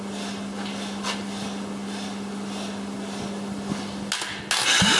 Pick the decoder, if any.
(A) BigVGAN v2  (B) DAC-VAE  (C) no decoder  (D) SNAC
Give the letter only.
C